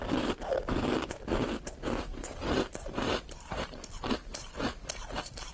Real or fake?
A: fake